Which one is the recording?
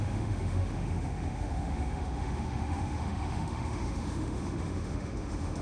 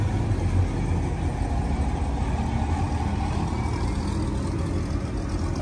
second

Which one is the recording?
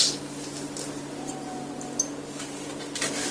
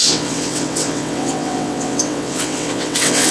first